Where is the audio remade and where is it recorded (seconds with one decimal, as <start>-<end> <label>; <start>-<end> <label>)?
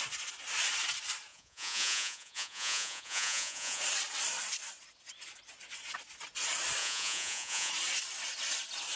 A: 0.0-1.3 recorded; 1.3-3.8 remade; 3.8-6.8 recorded; 6.8-7.7 remade; 7.7-9.0 recorded